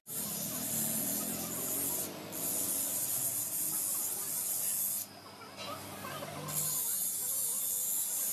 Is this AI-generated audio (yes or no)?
no